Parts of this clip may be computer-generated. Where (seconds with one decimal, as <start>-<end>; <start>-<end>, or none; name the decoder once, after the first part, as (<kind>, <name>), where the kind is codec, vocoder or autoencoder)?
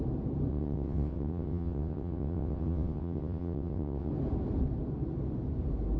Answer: 0.5-4.1 (vocoder, WaveNeXt)